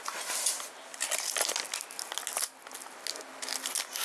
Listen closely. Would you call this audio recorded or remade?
recorded